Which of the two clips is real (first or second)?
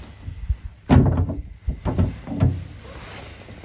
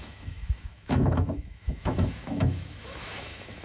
first